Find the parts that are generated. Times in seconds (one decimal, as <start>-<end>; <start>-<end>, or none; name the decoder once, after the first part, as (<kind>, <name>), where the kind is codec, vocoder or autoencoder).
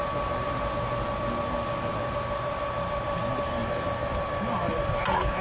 none